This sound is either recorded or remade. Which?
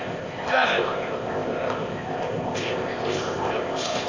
remade